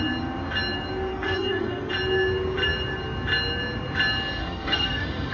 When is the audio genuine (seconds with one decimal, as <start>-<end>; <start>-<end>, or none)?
0.0-1.1; 1.9-4.4